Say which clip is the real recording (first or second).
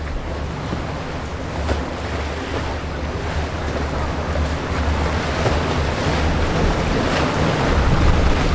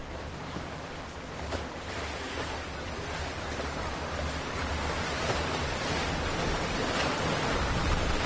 first